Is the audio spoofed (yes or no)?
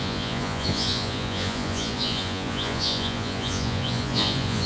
yes